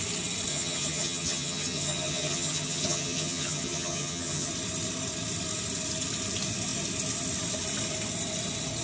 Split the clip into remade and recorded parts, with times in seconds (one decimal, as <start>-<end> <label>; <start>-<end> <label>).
0.0-0.5 recorded; 0.5-4.5 remade; 4.5-8.8 recorded